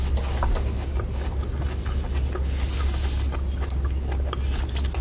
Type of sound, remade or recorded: recorded